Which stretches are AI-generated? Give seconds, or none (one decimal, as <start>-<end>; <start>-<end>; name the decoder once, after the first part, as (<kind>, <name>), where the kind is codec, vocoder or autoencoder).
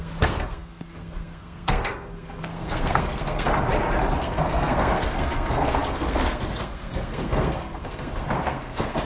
0.0-3.5 (codec, SNAC); 4.2-9.0